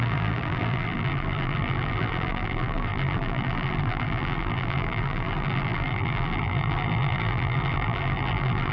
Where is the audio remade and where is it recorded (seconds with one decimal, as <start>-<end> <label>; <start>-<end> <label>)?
0.0-8.7 remade